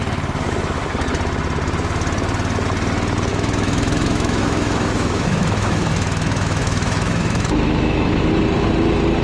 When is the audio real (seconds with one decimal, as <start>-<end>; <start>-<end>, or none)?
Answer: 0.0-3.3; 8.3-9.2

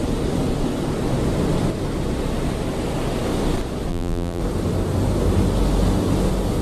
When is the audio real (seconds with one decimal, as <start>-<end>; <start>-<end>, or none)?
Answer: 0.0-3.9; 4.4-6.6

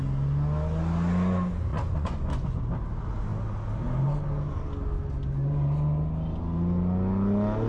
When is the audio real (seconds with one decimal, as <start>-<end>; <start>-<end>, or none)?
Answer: 0.0-1.7; 2.6-7.7

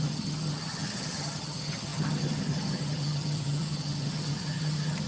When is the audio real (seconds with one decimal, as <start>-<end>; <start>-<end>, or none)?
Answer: none

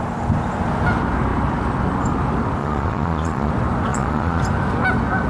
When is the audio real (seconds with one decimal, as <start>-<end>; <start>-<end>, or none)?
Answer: 0.0-2.6; 3.5-3.9; 4.4-5.3

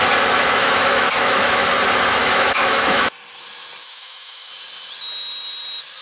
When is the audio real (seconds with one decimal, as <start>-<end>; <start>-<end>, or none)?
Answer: 0.0-0.6; 1.7-2.2; 3.1-3.8; 4.5-6.0